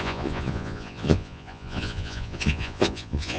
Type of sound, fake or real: fake